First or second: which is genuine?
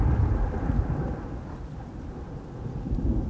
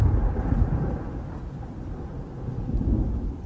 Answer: second